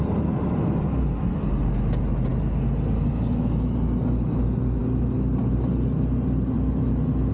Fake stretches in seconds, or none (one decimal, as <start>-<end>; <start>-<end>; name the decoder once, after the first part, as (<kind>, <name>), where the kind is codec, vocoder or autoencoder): none